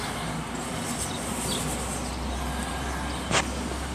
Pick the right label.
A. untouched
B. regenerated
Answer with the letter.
A